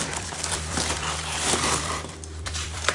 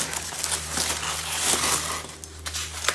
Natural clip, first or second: second